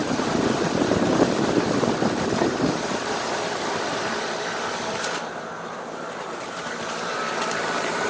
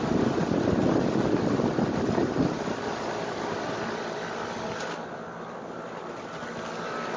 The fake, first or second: first